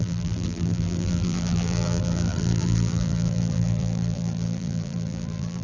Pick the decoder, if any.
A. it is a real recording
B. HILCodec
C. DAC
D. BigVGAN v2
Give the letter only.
D